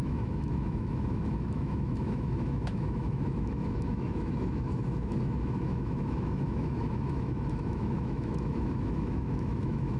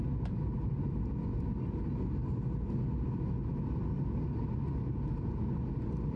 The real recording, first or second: second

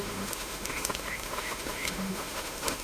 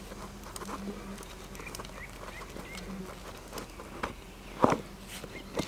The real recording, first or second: second